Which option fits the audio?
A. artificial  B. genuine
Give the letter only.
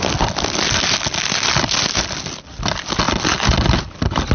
B